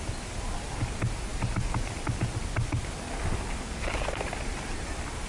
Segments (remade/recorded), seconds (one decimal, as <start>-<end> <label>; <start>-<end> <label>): 0.0-5.3 recorded